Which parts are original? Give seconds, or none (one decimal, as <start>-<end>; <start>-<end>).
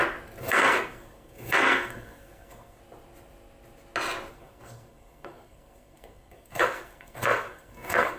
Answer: 0.0-0.4; 2.8-4.3